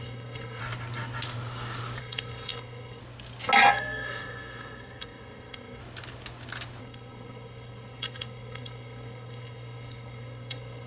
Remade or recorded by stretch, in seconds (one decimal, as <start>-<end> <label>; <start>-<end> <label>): 0.0-0.6 remade; 0.6-2.0 recorded; 2.0-3.0 remade; 3.0-3.7 recorded; 3.7-5.8 remade; 5.8-6.8 recorded; 6.8-10.9 remade